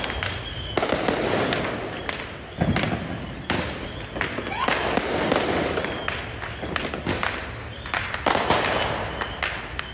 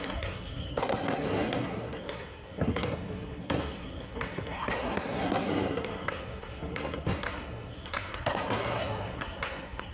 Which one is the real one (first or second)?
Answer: first